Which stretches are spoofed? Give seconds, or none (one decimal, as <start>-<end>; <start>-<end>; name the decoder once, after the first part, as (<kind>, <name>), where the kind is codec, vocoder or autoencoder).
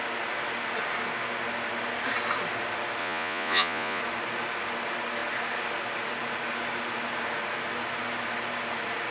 3.0-4.0 (vocoder, Vocos)